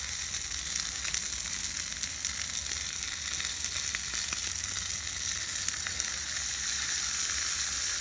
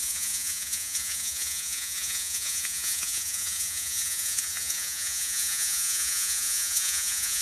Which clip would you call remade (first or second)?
second